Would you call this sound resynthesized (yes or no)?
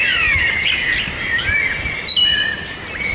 no